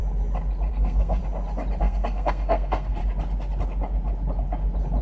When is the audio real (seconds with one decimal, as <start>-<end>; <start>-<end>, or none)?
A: 0.0-0.7; 1.2-1.8; 3.0-5.0